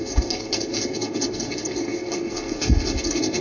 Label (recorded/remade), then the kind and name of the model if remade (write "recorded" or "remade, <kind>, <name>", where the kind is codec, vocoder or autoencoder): remade, codec, SNAC